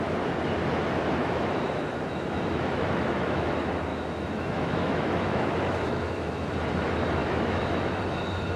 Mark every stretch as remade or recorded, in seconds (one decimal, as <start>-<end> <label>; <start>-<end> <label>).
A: 0.0-1.2 recorded; 1.2-3.5 remade; 3.5-3.9 recorded; 3.9-6.5 remade; 6.5-7.2 recorded; 7.2-8.0 remade; 8.0-8.6 recorded